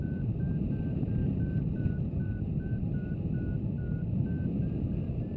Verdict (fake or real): real